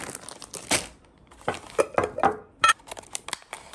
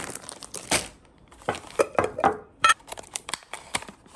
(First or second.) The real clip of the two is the first